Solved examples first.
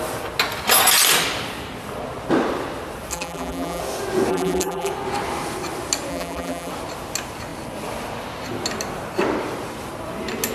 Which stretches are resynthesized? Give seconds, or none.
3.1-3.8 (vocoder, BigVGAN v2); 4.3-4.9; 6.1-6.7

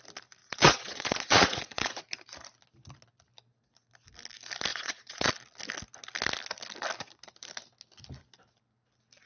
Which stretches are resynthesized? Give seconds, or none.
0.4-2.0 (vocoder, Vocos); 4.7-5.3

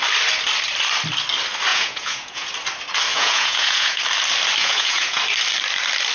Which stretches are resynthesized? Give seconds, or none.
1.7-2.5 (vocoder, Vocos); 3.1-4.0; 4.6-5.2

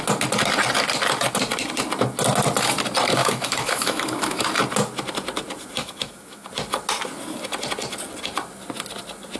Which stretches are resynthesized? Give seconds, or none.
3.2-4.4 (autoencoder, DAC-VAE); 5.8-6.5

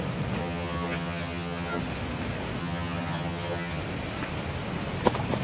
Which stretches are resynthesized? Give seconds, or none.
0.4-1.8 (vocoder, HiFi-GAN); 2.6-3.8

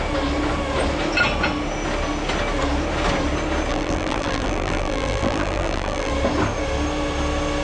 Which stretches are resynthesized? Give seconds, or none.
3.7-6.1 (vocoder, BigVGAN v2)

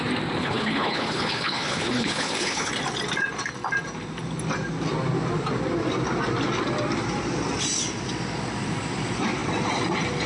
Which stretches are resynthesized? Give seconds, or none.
0.4-2.7 (codec, HILCodec)

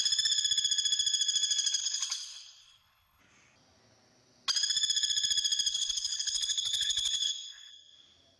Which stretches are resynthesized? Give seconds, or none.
1.8-3.2 (codec, HILCodec); 5.7-7.7